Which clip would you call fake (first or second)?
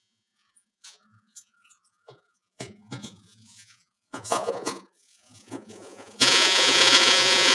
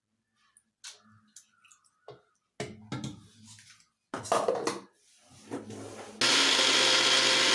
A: first